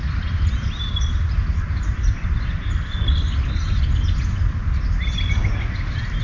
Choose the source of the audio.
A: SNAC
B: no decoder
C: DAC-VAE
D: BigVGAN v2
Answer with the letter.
B